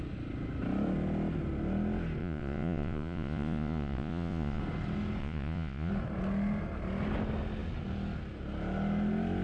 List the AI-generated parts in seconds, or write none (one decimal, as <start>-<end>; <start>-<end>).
2.2-4.6; 5.2-5.9